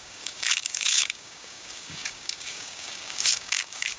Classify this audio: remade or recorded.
remade